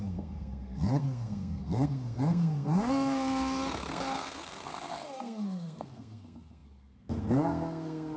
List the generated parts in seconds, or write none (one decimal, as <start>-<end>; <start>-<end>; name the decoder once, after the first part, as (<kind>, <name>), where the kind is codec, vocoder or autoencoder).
0.0-8.2 (codec, SNAC)